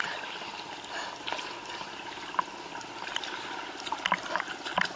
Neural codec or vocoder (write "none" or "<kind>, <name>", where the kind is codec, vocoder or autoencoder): none